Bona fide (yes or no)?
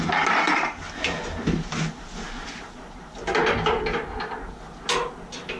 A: yes